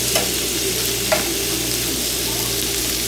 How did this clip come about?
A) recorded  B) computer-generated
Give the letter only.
A